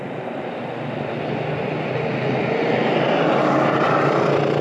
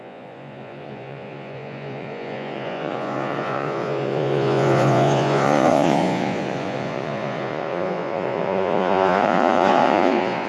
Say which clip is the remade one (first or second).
second